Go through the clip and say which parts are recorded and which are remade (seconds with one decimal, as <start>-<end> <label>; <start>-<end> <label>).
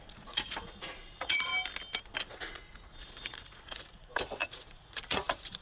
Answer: 0.0-1.5 remade; 1.5-2.3 recorded; 2.3-5.6 remade